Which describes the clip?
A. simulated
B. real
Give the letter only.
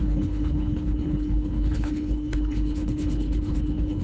A